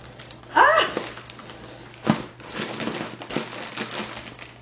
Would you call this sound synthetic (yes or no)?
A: no